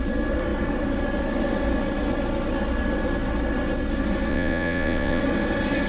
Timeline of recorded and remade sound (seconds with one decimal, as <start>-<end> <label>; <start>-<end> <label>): 0.0-4.3 recorded; 4.3-5.2 remade; 5.2-5.9 recorded